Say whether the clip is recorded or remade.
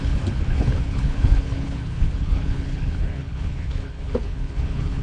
remade